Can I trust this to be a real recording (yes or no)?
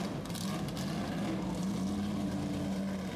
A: yes